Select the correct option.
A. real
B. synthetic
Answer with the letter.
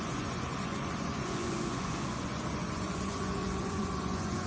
B